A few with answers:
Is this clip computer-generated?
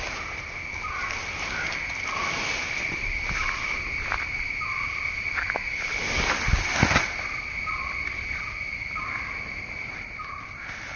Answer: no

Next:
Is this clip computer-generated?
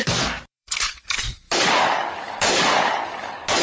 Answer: yes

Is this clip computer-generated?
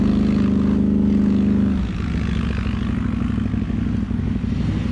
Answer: no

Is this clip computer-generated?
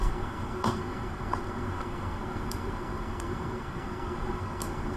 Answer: yes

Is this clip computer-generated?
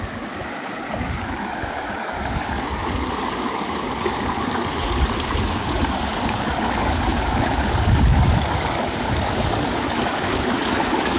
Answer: yes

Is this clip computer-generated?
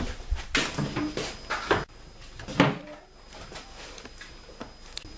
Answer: no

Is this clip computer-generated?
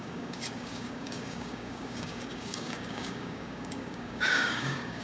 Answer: yes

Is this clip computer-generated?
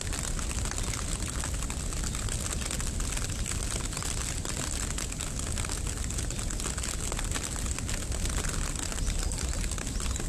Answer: no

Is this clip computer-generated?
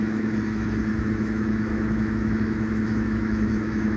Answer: yes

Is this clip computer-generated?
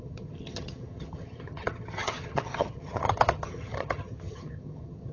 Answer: yes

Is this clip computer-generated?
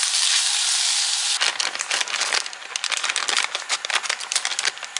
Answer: no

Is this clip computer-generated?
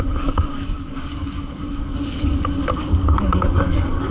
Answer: yes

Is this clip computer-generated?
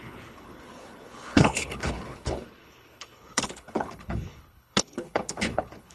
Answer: yes